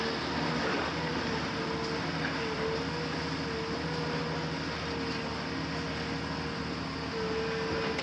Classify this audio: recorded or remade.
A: recorded